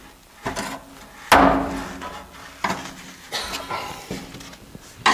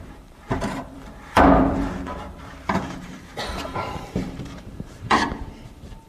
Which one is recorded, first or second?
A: first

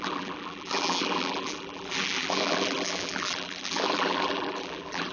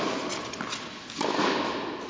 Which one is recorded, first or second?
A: second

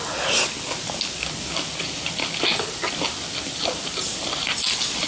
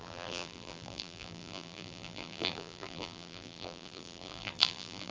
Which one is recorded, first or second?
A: first